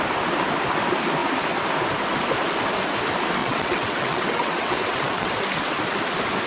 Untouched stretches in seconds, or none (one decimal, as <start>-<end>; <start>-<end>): 0.0-3.4; 5.3-6.5